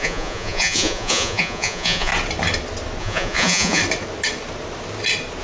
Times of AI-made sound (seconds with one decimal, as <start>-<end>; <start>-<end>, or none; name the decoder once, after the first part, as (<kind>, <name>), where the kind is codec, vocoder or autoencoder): 0.0-2.1 (vocoder, Vocos); 3.0-3.8